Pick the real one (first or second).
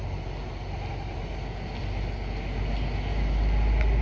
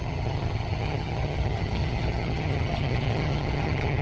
first